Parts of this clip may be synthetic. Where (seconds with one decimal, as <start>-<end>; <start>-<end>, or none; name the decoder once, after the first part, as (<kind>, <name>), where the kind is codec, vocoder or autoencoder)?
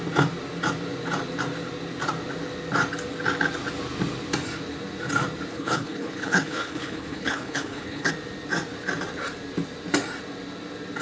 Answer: 5.5-8.1 (codec, HILCodec)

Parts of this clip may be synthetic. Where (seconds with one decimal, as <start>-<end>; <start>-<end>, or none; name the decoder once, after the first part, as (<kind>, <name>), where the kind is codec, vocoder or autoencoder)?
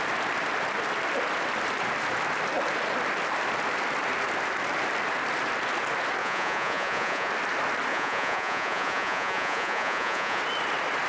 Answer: 6.2-7.3 (vocoder, Vocos); 7.9-10.4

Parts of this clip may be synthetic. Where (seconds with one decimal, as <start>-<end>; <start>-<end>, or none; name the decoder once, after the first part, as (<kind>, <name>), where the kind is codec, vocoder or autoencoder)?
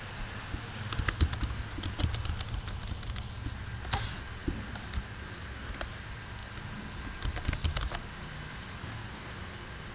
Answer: 8.8-9.3 (codec, DAC)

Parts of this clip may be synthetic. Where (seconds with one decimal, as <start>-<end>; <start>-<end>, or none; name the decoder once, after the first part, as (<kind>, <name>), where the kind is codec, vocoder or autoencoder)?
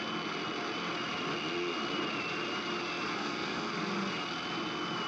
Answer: 3.1-3.7 (codec, SNAC)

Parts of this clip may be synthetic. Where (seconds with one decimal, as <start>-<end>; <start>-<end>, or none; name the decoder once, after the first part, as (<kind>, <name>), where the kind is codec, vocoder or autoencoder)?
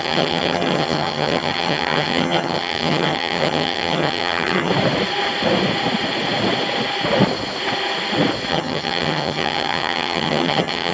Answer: 0.0-4.7 (vocoder, HiFi-GAN); 8.5-10.9